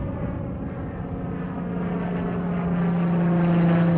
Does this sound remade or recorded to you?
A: recorded